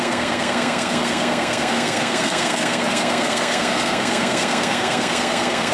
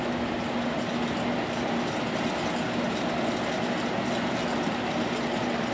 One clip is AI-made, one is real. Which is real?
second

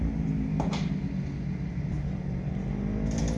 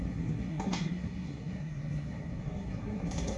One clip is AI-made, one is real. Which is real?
first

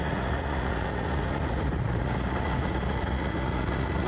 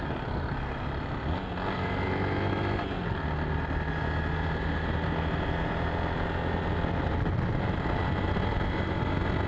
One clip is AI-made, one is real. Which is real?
second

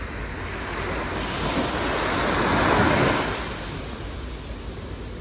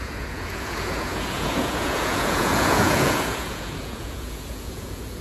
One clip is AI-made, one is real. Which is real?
first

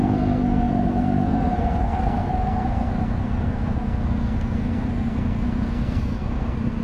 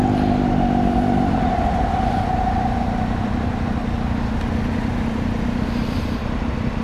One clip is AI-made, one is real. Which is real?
second